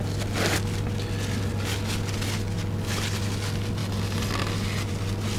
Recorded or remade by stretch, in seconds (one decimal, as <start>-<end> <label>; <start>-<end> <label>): 0.0-5.4 recorded